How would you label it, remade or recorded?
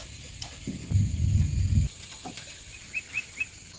recorded